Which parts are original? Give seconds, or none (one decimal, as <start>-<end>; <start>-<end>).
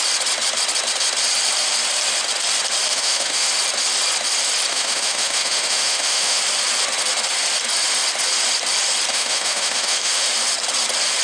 0.0-2.9; 3.5-4.7; 6.4-9.1; 10.3-11.2